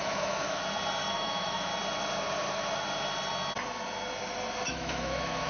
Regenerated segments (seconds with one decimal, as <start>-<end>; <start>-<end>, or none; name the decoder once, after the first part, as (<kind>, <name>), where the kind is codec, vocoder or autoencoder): 0.0-0.6 (autoencoder, DAC-VAE); 1.1-1.7; 4.7-5.5